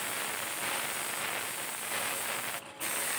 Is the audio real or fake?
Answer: real